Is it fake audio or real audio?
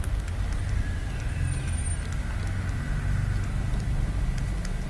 real